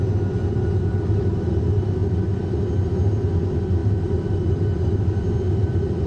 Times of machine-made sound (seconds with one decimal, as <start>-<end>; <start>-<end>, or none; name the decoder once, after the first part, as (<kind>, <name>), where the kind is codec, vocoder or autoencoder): none